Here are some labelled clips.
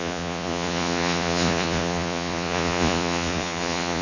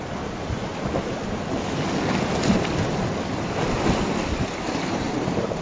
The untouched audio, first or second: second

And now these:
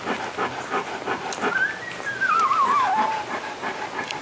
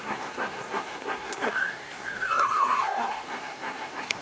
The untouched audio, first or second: first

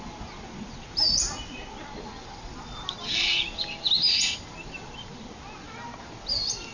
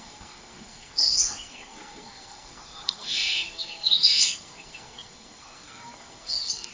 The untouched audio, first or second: first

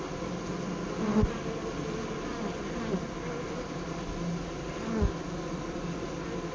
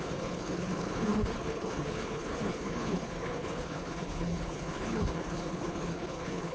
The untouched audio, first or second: first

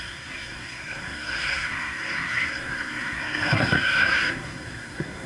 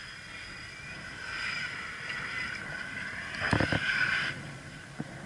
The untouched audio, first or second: second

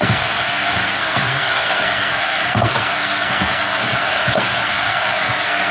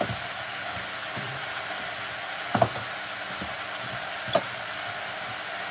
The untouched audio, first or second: second